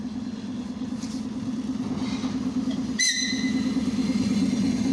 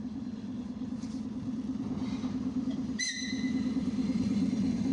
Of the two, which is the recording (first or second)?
first